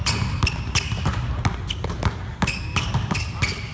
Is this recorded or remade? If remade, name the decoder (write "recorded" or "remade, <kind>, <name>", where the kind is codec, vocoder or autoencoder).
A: recorded